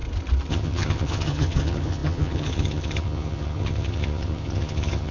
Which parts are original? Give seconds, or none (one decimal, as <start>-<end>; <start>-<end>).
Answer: 0.0-0.5

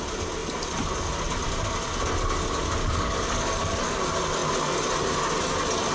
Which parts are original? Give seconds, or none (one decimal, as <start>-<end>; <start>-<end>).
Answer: 0.0-2.8; 4.0-5.9

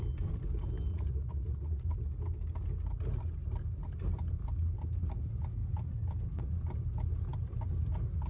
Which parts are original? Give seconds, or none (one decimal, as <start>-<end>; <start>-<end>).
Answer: 0.0-0.9; 1.9-8.3

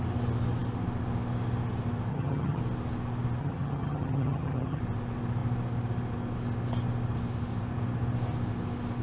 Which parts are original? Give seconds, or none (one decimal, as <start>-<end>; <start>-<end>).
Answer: 0.0-2.1; 2.6-3.4; 4.8-9.0

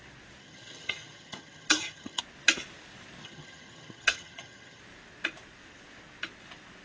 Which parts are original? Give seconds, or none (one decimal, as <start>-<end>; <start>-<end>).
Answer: 0.0-0.4; 2.2-3.2; 4.8-6.8